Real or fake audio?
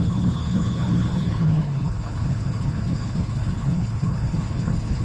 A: fake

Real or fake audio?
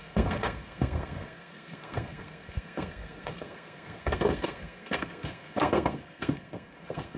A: fake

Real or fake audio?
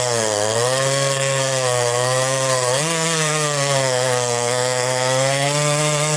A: fake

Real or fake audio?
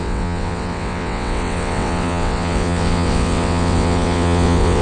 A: fake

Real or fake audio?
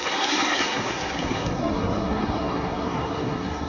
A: fake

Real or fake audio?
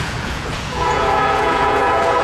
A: fake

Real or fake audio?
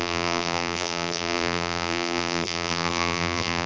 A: fake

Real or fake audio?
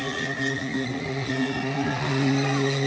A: fake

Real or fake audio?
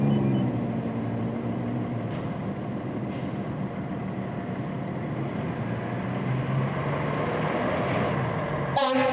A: real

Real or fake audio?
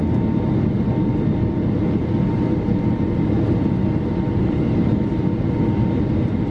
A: real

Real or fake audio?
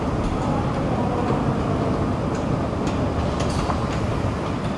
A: real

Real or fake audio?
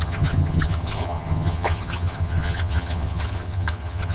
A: fake